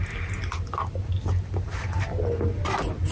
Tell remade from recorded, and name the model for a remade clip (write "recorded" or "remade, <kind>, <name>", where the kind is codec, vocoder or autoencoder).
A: recorded